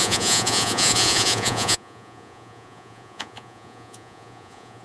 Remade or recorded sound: remade